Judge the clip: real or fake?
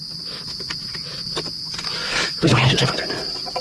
real